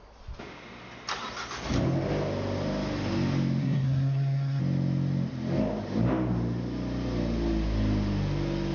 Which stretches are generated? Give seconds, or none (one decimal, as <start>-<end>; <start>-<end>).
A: 3.6-4.6